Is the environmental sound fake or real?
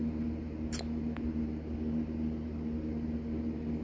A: real